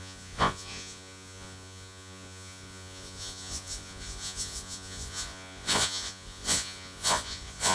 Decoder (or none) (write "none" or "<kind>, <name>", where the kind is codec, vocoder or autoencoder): vocoder, Vocos